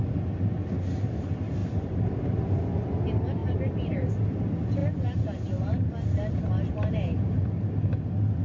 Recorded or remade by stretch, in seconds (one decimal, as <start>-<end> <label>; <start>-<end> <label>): 0.0-8.4 recorded